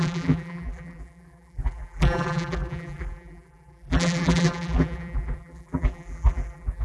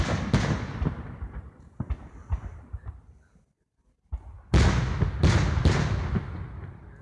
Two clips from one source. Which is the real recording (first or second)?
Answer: second